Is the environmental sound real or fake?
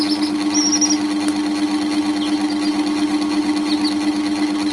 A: real